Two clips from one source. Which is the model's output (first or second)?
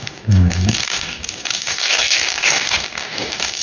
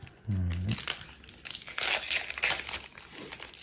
first